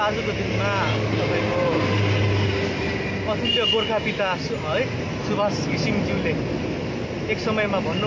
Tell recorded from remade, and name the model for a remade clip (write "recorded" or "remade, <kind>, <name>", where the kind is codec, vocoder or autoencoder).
recorded